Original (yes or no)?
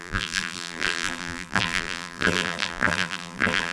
no